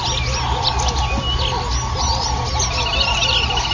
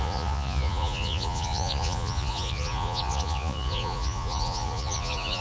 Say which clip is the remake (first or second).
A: second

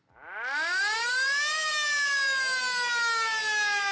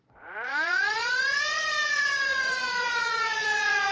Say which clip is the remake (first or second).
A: second